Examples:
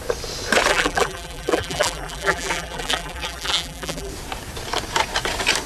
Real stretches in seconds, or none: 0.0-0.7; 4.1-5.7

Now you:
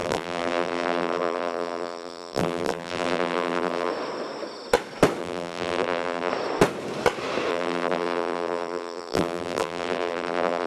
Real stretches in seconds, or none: 3.9-5.2; 6.3-7.5

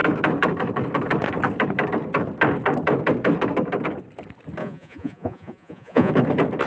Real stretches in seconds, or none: 0.0-4.6; 6.1-6.7

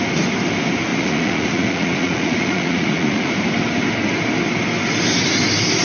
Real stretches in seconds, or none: 0.0-0.9; 3.3-5.8